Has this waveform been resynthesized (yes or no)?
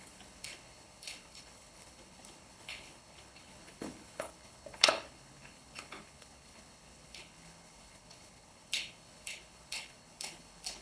yes